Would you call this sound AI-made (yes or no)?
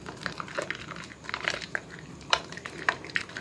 yes